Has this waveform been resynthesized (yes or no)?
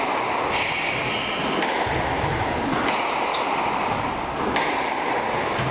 no